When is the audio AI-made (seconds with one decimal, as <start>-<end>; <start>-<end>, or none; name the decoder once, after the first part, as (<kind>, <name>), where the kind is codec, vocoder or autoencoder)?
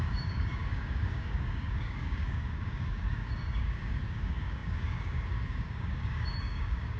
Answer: 0.0-7.0 (codec, DAC)